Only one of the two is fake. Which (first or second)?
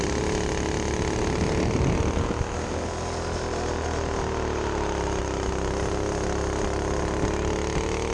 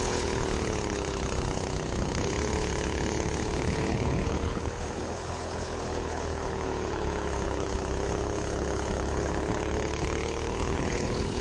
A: second